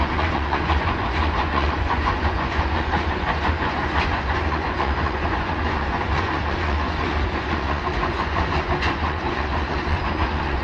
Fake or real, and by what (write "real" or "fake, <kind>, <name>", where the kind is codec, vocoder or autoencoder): fake, vocoder, Vocos